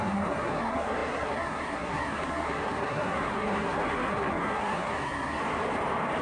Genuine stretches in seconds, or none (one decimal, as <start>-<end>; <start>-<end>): 5.4-6.2